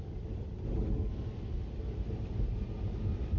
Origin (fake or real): real